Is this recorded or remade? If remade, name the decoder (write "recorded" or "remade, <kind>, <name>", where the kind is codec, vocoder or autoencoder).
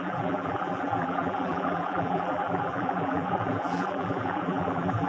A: remade, vocoder, BigVGAN v2